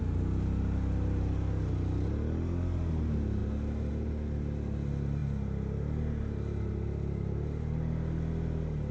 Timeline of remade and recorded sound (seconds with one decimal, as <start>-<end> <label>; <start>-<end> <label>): 0.0-8.9 recorded